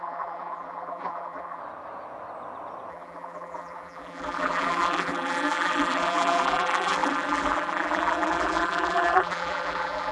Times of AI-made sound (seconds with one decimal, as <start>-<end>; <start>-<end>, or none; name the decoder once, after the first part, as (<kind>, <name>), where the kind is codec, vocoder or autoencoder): 0.0-1.6 (vocoder, BigVGAN v2); 2.9-10.1